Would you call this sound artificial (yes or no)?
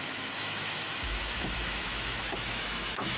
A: yes